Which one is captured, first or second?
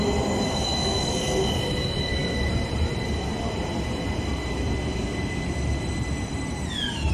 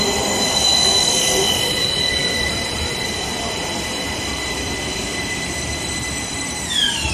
first